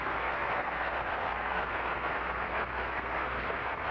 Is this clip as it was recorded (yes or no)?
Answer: no